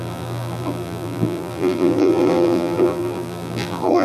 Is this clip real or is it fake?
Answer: fake